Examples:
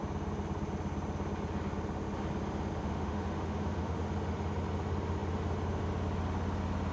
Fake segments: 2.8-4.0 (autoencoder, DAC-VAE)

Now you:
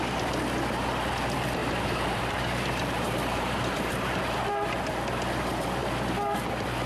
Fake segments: 1.6-4.2 (vocoder, BigVGAN v2)

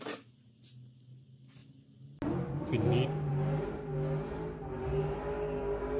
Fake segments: none

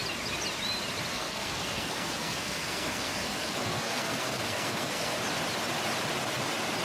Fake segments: 1.1-5.2 (codec, SNAC)

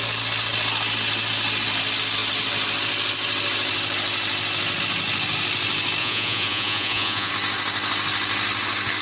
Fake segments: 6.0-7.3 (vocoder, Vocos)